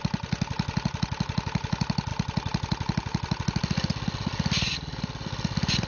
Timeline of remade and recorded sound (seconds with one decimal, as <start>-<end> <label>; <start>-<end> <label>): 0.0-5.9 recorded